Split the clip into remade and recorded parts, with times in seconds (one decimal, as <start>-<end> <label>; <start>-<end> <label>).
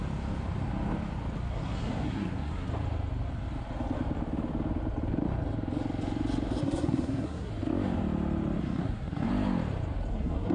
0.0-1.5 recorded; 1.5-2.7 remade; 2.7-6.6 recorded; 6.6-7.5 remade; 7.5-8.6 recorded; 8.6-9.3 remade; 9.3-10.1 recorded; 10.1-10.5 remade